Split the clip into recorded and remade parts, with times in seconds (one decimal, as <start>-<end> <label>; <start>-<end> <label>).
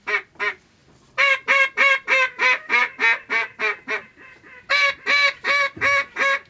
0.0-6.5 recorded